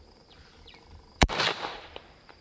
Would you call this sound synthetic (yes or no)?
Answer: yes